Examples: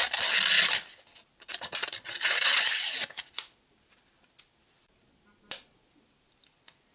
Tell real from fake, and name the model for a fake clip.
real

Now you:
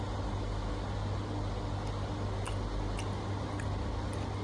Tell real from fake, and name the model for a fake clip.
real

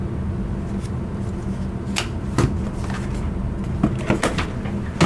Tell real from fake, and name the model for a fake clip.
real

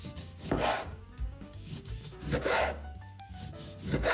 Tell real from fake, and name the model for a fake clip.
fake, codec, DAC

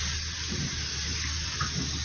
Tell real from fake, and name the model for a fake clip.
real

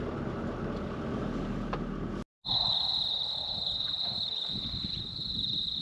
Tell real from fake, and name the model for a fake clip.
real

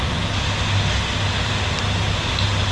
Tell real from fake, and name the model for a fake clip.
real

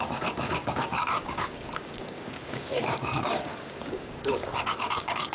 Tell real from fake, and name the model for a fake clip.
fake, codec, DAC